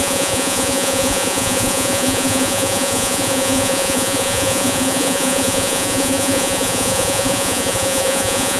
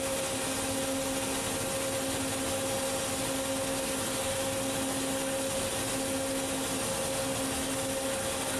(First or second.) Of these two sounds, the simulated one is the first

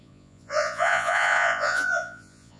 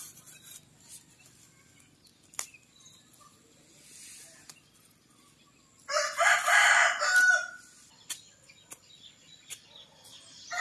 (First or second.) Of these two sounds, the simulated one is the first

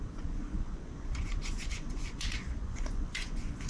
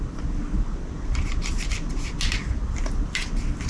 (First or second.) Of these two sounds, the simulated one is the first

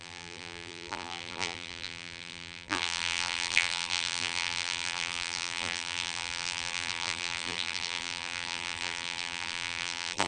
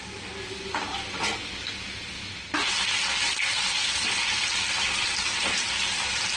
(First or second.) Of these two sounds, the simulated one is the first